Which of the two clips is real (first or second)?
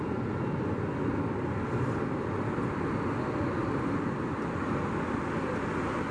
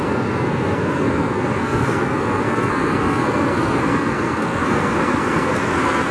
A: first